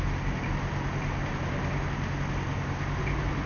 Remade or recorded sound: recorded